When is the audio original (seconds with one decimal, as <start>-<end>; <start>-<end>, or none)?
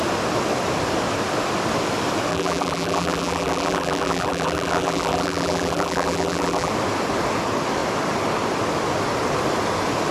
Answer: 0.0-2.3; 6.7-10.1